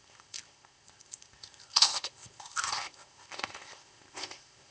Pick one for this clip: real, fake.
fake